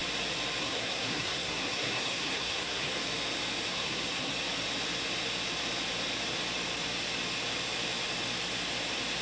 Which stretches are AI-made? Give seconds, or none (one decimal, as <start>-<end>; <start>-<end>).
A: 0.6-2.9; 3.7-4.3